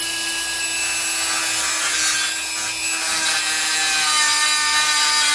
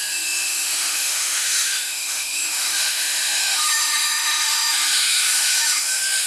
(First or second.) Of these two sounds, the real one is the first